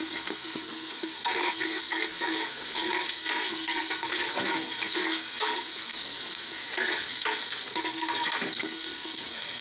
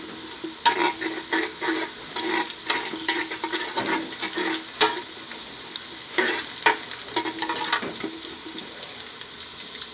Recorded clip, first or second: second